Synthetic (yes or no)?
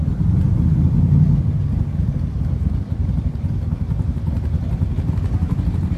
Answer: no